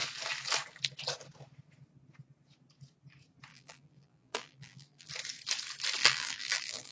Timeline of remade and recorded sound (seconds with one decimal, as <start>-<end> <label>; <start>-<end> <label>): 0.0-3.5 recorded; 3.5-5.1 remade; 5.1-6.0 recorded; 6.0-6.9 remade